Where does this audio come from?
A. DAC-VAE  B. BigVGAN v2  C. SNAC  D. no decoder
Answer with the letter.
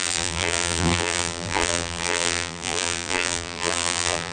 B